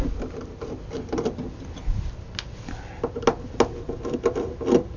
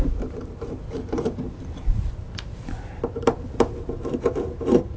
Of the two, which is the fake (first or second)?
second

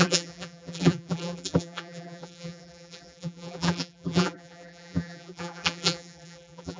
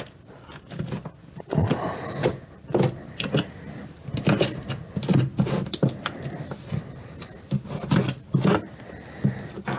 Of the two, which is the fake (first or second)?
first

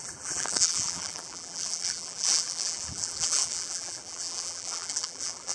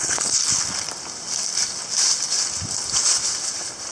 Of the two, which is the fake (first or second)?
first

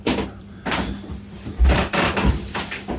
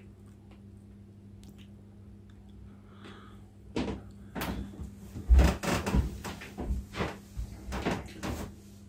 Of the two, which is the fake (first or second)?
first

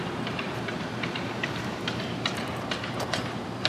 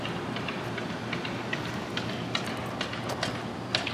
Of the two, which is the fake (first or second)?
first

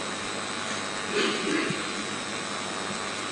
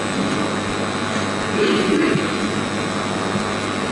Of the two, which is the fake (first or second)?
first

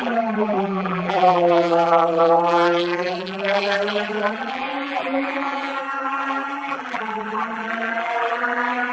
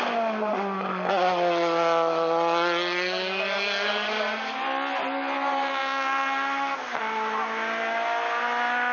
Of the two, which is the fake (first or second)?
first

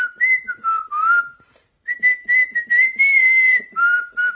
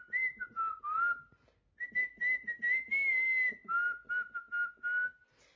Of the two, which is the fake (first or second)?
first